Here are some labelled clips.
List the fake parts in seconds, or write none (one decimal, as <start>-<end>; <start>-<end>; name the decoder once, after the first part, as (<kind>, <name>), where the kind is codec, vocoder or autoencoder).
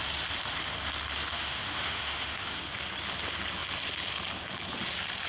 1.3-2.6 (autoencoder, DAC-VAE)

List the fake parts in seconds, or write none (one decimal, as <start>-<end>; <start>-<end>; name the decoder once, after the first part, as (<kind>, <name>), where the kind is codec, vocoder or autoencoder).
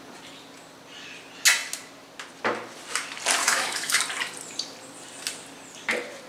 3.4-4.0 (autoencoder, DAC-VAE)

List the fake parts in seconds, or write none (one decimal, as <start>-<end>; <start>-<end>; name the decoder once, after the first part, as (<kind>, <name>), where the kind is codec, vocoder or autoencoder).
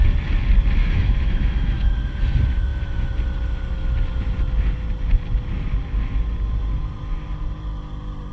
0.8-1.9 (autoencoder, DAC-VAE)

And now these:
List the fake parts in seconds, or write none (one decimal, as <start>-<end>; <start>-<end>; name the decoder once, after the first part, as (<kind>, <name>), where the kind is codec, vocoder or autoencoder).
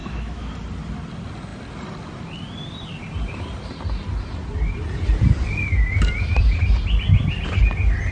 0.0-0.5 (autoencoder, DAC-VAE)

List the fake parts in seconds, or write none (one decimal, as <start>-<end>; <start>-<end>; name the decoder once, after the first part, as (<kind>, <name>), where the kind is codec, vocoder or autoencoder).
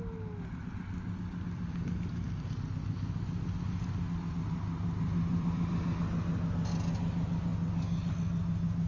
none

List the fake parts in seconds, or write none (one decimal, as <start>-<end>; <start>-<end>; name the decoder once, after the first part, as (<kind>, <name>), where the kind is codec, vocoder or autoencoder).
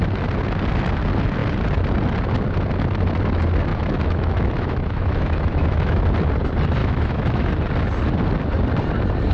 3.7-6.0 (autoencoder, DAC-VAE); 6.8-7.5